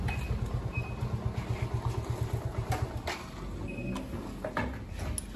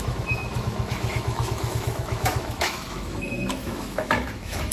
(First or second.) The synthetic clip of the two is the second